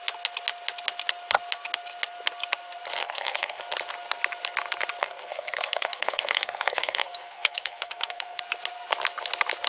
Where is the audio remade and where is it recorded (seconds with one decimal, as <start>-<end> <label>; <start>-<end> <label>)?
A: 0.0-3.0 recorded; 3.0-3.6 remade; 3.6-5.0 recorded; 5.0-8.4 remade; 8.4-9.7 recorded